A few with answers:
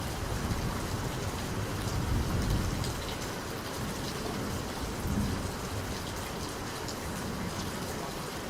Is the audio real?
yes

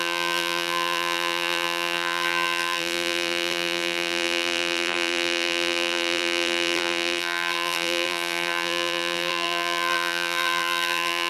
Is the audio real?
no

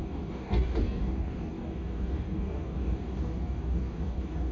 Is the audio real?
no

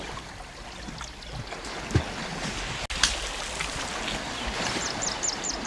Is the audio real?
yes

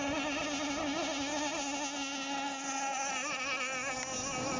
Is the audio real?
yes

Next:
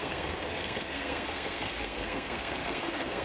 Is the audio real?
no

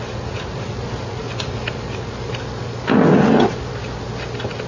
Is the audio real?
yes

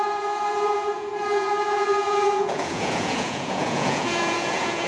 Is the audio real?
no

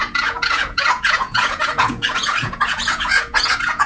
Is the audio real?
no